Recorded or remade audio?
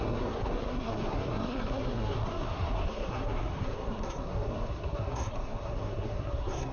remade